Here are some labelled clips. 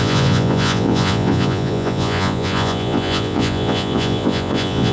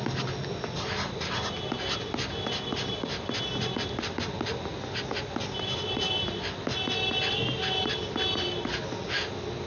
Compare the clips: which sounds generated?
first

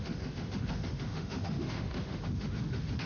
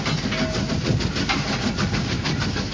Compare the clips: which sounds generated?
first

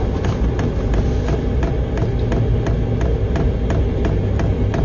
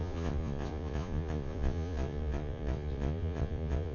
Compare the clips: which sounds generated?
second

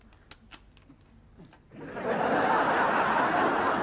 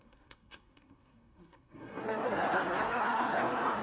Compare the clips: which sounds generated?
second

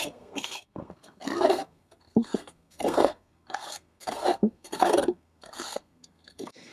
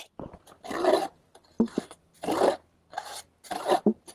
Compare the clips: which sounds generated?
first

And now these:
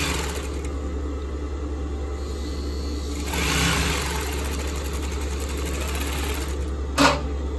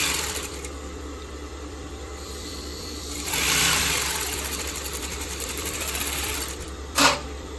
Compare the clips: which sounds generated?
second